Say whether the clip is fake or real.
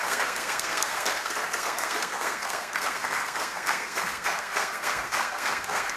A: fake